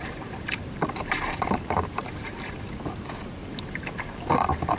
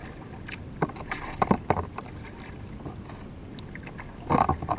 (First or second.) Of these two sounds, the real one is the second